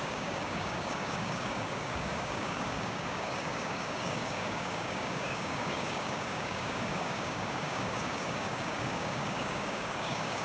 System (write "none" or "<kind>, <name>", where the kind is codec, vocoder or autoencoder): codec, DAC